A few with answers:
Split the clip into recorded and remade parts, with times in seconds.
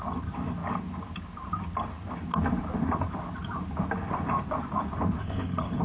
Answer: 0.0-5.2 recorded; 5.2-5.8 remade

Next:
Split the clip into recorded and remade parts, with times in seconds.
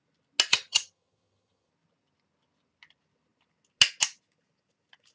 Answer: 0.0-0.5 recorded; 0.5-1.7 remade; 1.7-5.1 recorded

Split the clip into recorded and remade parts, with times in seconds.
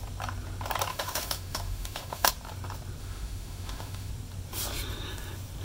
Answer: 0.0-0.9 recorded; 0.9-2.3 remade; 2.3-3.0 recorded; 3.0-4.1 remade; 4.1-5.6 recorded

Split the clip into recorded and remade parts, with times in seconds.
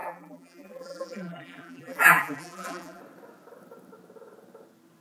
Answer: 0.0-3.0 remade; 3.0-5.0 recorded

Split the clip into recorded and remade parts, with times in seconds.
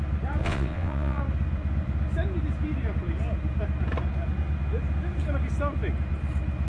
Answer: 0.0-0.4 recorded; 0.4-1.2 remade; 1.2-6.7 recorded